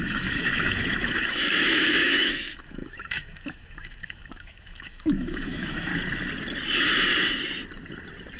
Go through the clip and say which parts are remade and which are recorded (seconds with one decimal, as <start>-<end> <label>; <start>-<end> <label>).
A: 0.0-5.9 remade; 5.9-8.4 recorded